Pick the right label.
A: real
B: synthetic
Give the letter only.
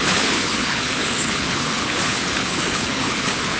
B